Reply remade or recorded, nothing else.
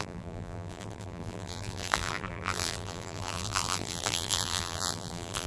remade